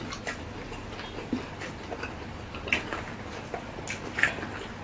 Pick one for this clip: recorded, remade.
recorded